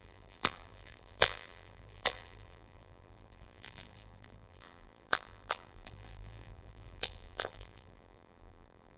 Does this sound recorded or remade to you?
remade